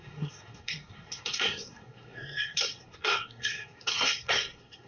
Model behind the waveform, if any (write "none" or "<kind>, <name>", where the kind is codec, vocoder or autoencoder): codec, SNAC